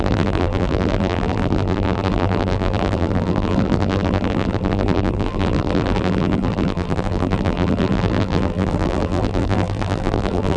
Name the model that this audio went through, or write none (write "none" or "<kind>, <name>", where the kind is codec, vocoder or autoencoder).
vocoder, BigVGAN v2